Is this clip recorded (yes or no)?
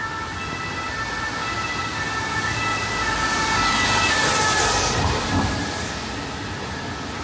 yes